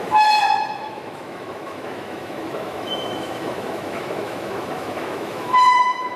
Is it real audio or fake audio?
fake